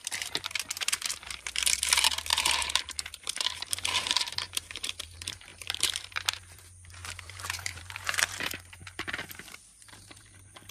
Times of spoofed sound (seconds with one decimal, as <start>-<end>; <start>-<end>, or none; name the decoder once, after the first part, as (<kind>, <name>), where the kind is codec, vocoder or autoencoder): 0.0-10.7 (vocoder, BigVGAN v2)